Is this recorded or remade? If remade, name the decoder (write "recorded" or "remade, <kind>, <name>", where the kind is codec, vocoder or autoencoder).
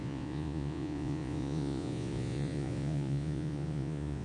remade, vocoder, Vocos